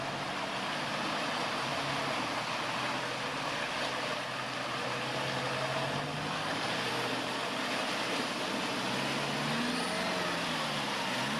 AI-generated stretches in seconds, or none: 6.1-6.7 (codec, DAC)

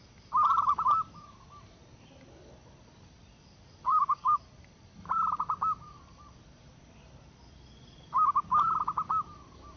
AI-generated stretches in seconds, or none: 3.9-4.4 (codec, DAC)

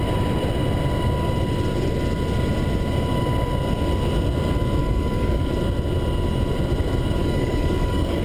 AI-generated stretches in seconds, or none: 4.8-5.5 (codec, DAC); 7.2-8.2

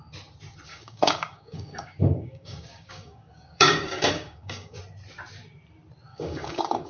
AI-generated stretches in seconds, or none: 0.7-4.8 (codec, DAC); 6.1-6.9

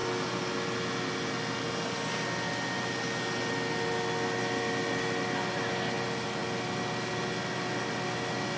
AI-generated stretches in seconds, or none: none

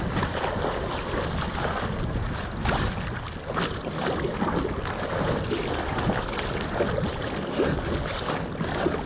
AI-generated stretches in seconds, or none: none